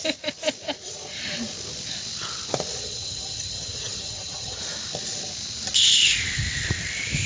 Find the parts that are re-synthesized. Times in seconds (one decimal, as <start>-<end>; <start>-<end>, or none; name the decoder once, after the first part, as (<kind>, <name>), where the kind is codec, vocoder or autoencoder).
2.8-4.6 (vocoder, HiFi-GAN)